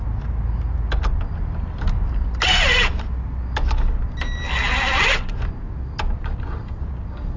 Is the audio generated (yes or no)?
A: no